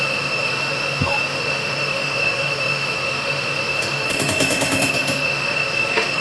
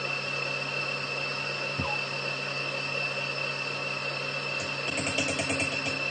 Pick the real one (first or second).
second